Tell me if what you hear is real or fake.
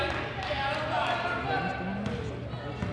real